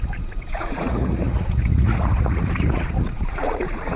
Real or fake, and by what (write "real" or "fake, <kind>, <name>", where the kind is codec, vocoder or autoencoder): fake, vocoder, Vocos